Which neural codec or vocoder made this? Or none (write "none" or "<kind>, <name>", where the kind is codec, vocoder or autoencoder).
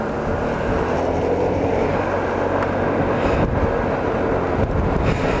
none